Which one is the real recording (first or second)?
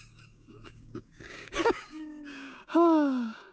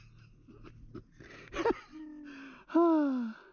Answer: second